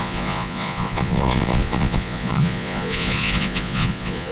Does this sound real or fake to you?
fake